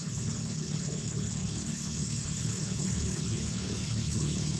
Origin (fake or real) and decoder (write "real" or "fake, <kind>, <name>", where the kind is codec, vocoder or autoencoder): fake, codec, HILCodec